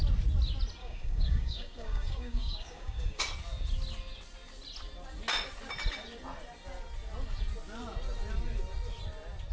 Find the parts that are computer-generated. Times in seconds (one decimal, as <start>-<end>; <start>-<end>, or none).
0.8-3.2